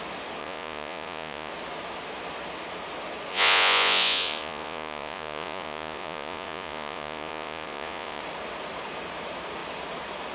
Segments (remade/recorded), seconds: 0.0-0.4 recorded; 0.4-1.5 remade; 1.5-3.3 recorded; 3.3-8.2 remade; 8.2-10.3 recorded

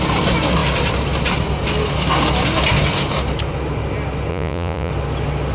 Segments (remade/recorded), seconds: 0.0-4.3 recorded; 4.3-4.9 remade; 4.9-5.5 recorded

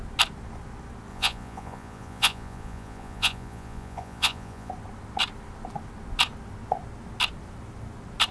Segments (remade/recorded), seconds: 0.0-1.1 recorded; 1.1-4.7 remade; 4.7-8.3 recorded

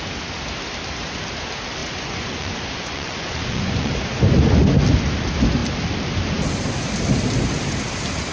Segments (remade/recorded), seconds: 0.0-1.8 recorded; 1.8-3.9 remade; 3.9-8.3 recorded

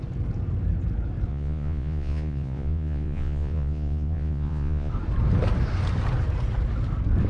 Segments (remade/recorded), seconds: 0.0-1.3 recorded; 1.3-4.9 remade; 4.9-7.3 recorded

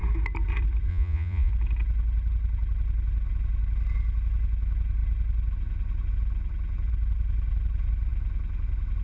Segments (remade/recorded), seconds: 0.0-0.9 recorded; 0.9-1.5 remade; 1.5-9.0 recorded

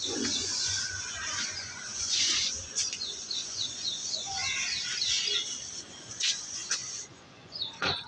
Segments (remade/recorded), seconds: 0.0-4.4 remade; 4.4-5.8 recorded; 5.8-8.1 remade

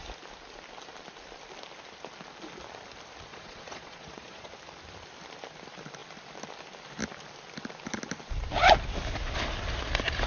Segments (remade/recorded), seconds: 0.0-3.3 recorded; 3.3-4.5 remade; 4.5-10.3 recorded